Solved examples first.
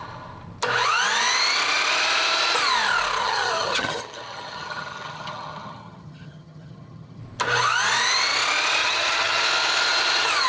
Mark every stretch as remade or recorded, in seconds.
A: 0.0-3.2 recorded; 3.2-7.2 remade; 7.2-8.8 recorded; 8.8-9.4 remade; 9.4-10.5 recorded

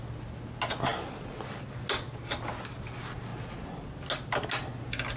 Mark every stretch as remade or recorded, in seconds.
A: 0.0-5.2 recorded

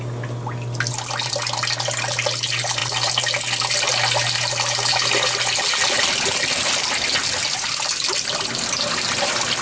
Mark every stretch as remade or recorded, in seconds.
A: 0.0-9.6 recorded